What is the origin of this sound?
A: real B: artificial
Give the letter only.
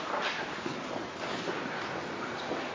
A